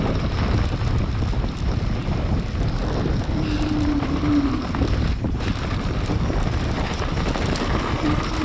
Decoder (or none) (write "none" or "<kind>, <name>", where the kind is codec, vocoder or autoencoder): none